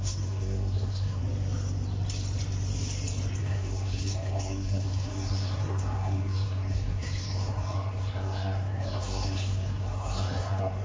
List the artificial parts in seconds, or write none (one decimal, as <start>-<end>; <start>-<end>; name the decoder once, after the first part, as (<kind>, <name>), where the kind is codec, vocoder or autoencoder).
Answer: 0.0-1.2 (codec, SNAC); 3.4-10.8